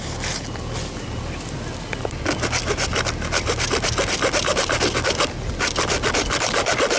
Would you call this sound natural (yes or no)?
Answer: yes